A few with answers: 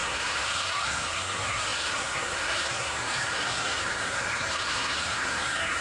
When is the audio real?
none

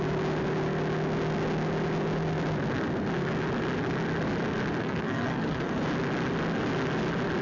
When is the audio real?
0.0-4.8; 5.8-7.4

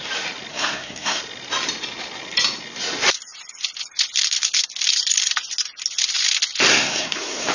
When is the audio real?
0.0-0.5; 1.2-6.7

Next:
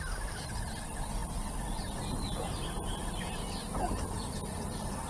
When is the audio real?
0.0-5.1

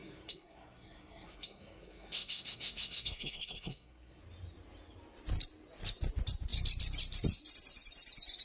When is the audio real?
4.2-8.4